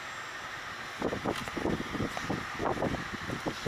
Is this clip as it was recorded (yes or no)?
yes